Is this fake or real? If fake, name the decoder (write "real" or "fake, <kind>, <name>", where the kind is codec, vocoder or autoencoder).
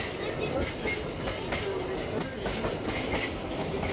real